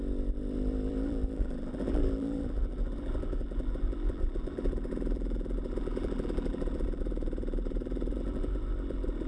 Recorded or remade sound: remade